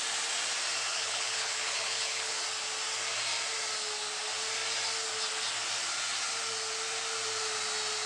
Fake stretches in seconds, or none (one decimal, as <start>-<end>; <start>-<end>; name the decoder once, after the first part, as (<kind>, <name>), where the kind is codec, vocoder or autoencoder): 0.9-2.4 (codec, HILCodec)

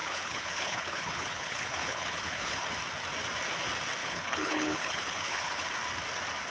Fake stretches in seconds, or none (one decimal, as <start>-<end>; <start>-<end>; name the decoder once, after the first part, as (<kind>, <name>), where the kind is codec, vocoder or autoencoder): 0.0-2.6 (codec, HILCodec); 4.0-5.7